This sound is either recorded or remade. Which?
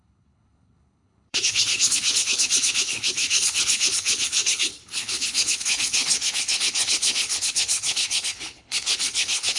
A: remade